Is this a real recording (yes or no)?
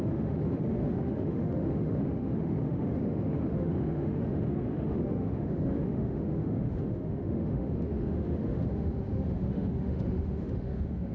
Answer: no